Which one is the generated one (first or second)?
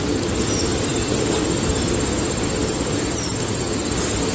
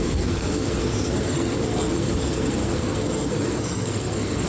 second